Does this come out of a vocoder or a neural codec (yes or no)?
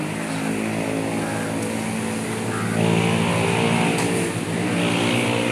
no